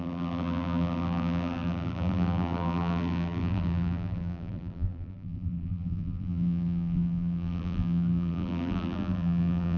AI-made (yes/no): yes